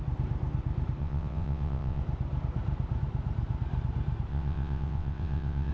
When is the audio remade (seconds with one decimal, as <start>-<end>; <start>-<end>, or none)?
1.0-2.0; 4.3-5.7